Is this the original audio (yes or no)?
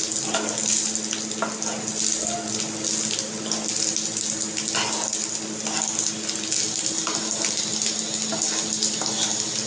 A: yes